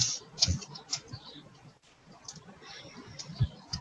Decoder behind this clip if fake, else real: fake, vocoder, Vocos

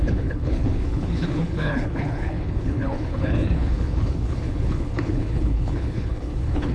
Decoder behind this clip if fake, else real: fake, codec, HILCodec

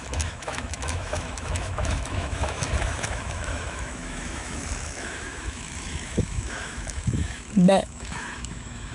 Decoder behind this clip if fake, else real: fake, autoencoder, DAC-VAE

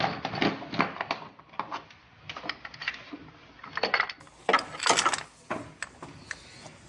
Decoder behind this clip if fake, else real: real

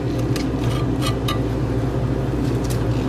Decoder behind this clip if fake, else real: real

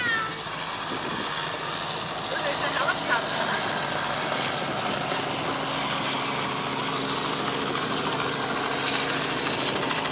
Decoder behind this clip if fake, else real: real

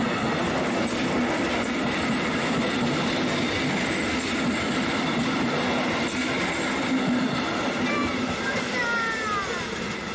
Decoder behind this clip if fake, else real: real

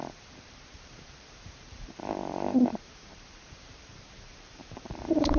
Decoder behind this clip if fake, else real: fake, vocoder, BigVGAN v2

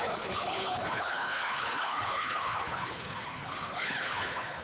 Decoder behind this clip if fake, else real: fake, codec, HILCodec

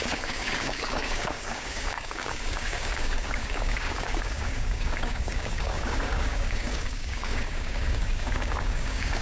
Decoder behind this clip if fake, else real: fake, codec, DAC